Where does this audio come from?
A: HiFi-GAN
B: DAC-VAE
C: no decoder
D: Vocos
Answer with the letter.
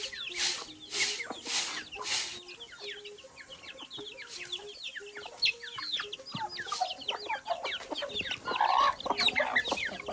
C